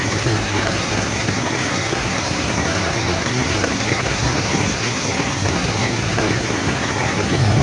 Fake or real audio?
fake